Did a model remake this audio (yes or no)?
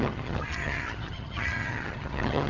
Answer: yes